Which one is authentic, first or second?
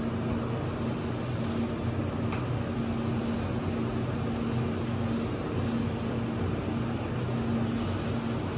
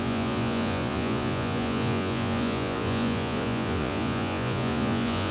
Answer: first